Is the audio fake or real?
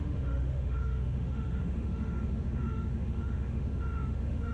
fake